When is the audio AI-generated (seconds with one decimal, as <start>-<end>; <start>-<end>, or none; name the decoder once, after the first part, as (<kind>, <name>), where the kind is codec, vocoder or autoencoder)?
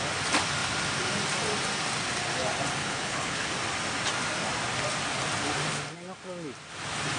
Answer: 2.8-3.5 (codec, HILCodec)